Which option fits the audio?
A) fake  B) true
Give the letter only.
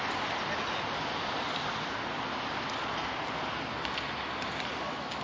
B